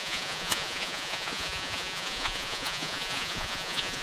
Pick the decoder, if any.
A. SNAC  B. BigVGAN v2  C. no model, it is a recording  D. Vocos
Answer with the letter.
D